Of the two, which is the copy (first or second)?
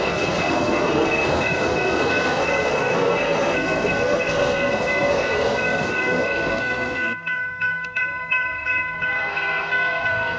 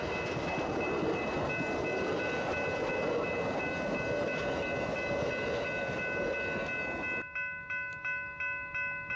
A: first